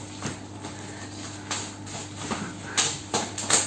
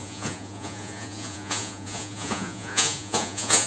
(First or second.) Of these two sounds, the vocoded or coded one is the second